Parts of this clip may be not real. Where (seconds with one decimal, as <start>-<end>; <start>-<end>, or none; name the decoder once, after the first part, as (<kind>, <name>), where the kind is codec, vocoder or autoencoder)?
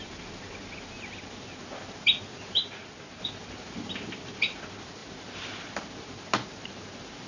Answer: 5.0-6.0 (vocoder, BigVGAN v2)